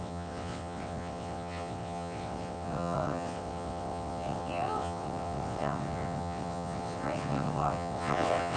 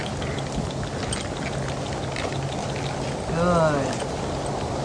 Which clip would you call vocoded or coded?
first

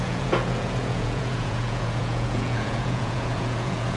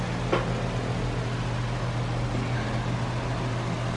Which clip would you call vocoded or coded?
first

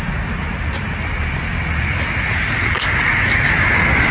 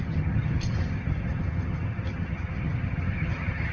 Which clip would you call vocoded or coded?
second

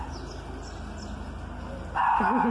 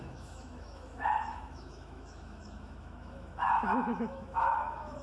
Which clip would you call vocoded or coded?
second